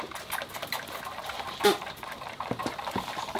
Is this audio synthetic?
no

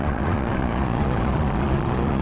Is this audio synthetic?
yes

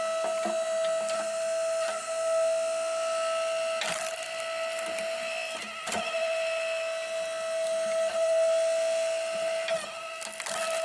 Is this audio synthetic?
no